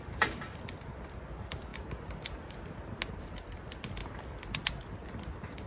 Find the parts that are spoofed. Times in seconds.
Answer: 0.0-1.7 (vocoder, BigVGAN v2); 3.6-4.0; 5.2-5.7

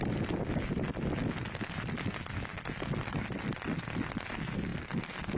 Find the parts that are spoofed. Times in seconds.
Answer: none

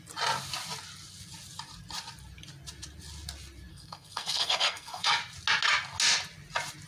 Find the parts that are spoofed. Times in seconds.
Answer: 3.7-5.2 (codec, SNAC)

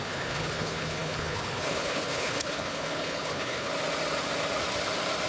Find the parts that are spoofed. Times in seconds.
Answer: 0.0-3.7 (codec, HILCodec)

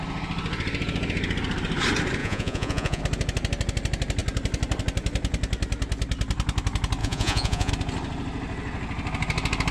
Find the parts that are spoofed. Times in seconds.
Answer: 2.2-3.0 (vocoder, Vocos); 7.0-7.7

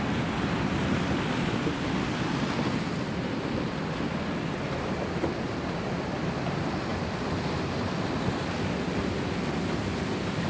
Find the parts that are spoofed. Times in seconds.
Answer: none

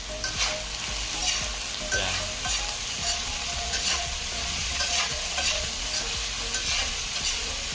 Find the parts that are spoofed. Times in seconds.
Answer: 3.0-5.8 (vocoder, Vocos); 6.6-7.7

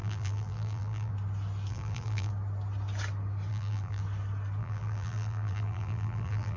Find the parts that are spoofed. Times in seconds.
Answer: 0.0-1.1 (vocoder, BigVGAN v2); 1.7-2.3; 3.5-4.0; 4.6-6.6